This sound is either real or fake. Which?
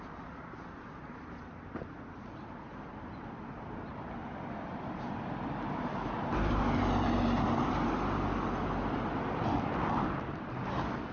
real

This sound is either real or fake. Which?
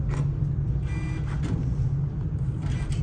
real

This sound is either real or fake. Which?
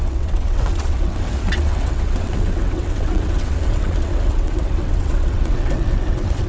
fake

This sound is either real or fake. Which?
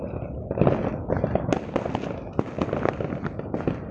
real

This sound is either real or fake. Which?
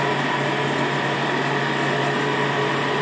real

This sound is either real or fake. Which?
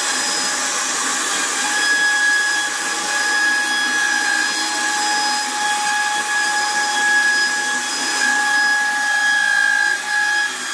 real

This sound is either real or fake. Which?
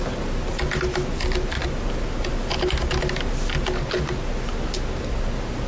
real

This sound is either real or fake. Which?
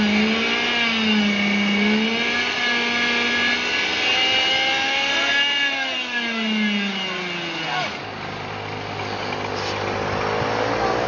real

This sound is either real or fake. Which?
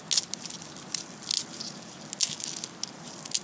real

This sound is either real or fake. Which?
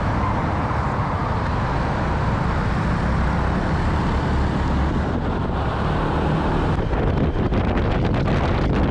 real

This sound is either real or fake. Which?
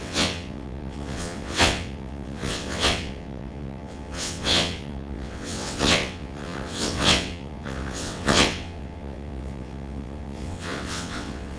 fake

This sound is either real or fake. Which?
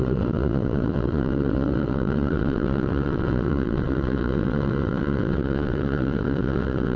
fake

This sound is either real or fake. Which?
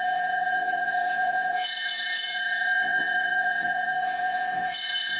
fake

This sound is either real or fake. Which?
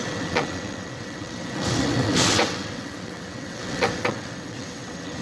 fake